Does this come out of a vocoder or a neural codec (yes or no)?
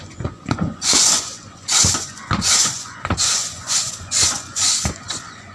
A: yes